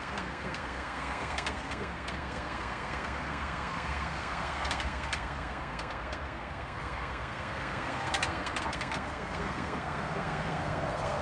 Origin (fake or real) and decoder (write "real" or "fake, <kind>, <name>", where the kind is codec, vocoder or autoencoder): fake, codec, SNAC